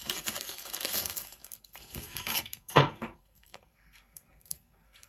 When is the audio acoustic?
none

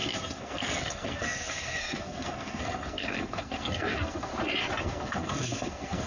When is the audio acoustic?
4.3-4.8